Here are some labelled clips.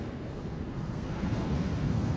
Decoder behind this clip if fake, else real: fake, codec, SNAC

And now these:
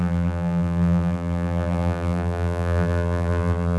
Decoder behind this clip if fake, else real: fake, vocoder, BigVGAN v2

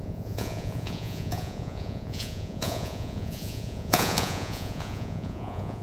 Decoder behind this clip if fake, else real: fake, vocoder, Vocos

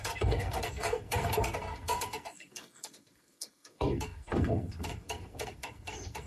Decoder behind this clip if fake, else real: fake, codec, SNAC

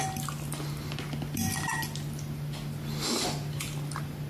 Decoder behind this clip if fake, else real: real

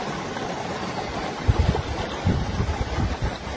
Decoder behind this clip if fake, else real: real